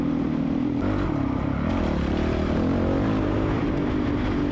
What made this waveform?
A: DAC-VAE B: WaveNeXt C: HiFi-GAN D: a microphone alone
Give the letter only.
D